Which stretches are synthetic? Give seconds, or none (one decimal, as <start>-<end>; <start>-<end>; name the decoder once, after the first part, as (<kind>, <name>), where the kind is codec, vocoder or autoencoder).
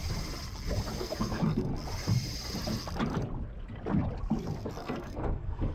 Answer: 1.0-1.7 (codec, SNAC); 4.7-5.7